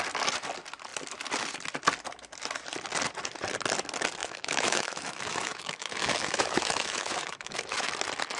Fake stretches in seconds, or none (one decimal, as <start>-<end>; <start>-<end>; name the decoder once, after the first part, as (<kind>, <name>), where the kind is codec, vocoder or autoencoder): 4.2-7.9 (autoencoder, DAC-VAE)